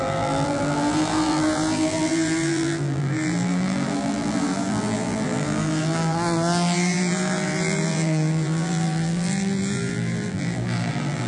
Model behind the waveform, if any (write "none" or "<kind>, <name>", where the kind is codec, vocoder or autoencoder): vocoder, BigVGAN v2